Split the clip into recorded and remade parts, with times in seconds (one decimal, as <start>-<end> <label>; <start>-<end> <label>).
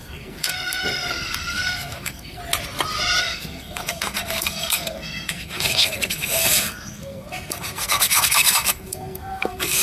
0.0-2.4 remade; 2.4-3.2 recorded; 3.2-9.8 remade